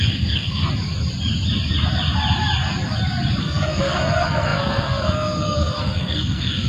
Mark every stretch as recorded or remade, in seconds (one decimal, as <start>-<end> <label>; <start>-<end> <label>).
0.0-0.6 remade; 0.6-3.4 recorded; 3.4-6.7 remade